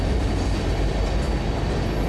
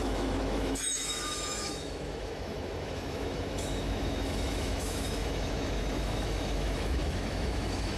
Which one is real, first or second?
first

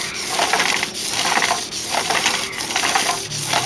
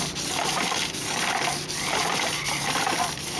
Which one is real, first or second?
first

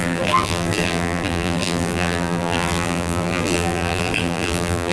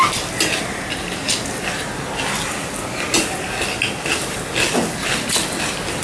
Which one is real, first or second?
second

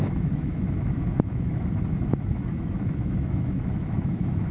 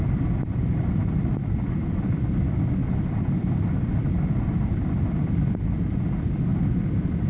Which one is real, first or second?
second